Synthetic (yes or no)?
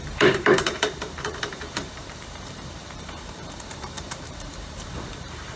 yes